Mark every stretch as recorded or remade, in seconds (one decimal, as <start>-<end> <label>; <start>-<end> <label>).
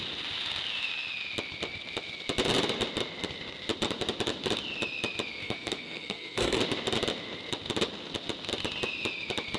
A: 0.0-5.4 recorded; 5.4-6.6 remade; 6.6-9.6 recorded